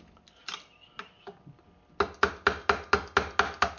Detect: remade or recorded recorded